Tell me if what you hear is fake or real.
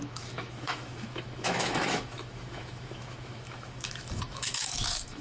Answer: fake